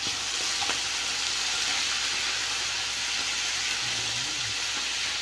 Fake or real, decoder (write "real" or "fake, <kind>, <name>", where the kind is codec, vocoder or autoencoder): real